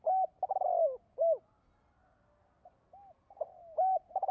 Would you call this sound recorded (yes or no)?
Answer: yes